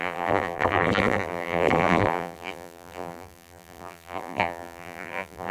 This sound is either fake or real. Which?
fake